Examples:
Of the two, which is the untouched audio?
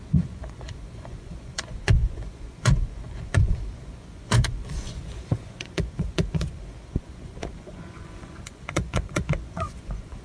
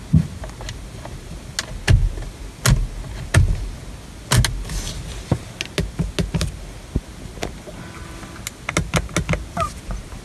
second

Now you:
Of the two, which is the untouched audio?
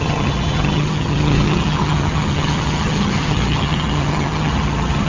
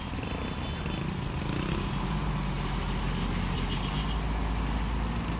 second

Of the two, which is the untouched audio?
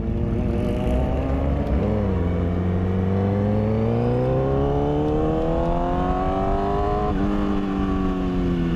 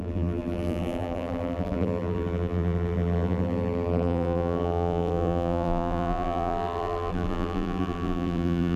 first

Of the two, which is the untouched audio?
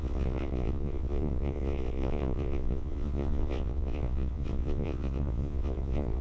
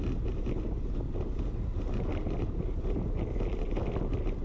second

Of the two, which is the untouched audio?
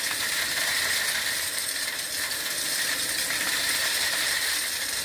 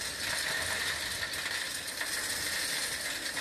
second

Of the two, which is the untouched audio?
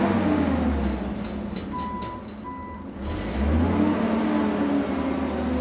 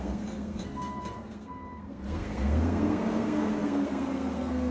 first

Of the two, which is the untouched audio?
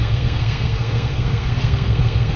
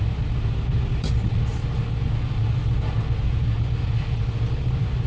second